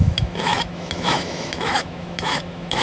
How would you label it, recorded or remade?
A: remade